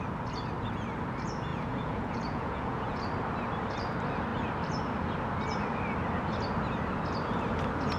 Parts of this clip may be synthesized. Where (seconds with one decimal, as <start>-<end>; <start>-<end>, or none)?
1.5-3.0